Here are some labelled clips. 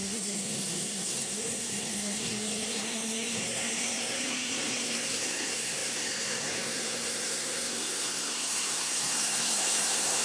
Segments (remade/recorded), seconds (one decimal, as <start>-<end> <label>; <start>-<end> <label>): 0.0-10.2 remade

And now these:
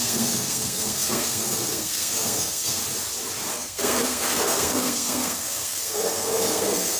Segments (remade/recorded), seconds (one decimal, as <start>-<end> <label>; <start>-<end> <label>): 0.0-2.8 remade; 2.8-3.5 recorded; 3.5-7.0 remade

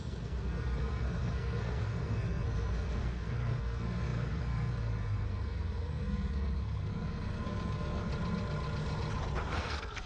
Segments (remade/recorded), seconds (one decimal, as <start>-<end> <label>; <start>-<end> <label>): 0.0-8.1 remade; 8.1-9.5 recorded; 9.5-10.1 remade

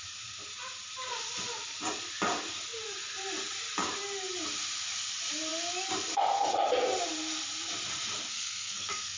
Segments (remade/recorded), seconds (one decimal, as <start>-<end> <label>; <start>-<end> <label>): 0.0-8.3 recorded; 8.3-9.2 remade

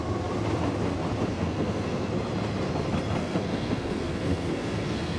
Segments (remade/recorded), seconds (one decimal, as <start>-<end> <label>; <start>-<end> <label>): 0.0-1.3 recorded; 1.3-2.1 remade; 2.1-3.2 recorded; 3.2-5.2 remade

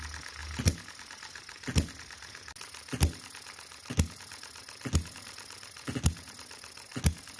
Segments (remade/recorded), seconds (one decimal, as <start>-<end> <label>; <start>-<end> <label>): 0.0-7.4 recorded

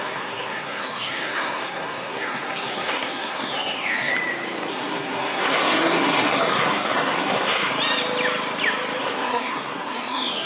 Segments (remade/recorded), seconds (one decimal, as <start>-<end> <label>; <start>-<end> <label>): 0.0-4.1 remade; 4.1-4.7 recorded; 4.7-7.7 remade; 7.7-9.0 recorded; 9.0-10.5 remade